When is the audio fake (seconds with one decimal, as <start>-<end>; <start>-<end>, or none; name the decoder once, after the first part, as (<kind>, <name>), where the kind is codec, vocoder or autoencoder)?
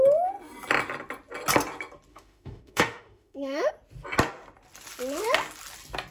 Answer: 2.1-3.7 (autoencoder, DAC-VAE)